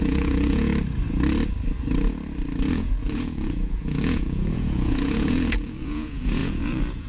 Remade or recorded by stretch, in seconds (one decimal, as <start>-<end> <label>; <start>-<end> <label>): 0.0-0.7 remade; 0.7-2.7 recorded; 2.7-7.1 remade